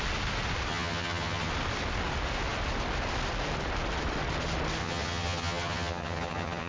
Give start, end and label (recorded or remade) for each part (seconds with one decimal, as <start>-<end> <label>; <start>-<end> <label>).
0.0-0.7 recorded; 0.7-1.5 remade; 1.5-4.8 recorded; 4.8-6.7 remade